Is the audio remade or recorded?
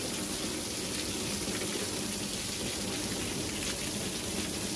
recorded